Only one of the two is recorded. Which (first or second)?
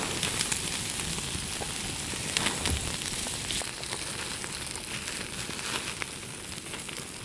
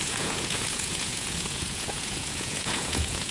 first